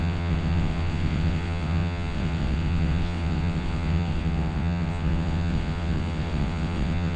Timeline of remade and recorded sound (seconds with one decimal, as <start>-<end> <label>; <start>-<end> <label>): 0.0-7.2 remade